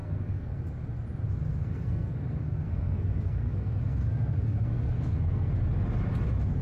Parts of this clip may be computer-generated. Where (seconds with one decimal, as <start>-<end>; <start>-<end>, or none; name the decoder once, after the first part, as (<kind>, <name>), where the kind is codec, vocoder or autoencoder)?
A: 0.0-0.6 (codec, SNAC); 1.5-5.5